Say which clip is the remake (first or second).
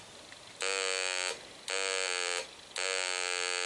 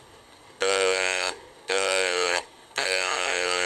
second